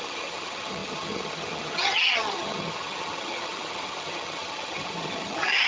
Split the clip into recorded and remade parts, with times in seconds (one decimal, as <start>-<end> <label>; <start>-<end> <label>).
0.0-5.7 remade